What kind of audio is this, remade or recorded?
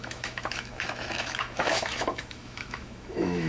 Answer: remade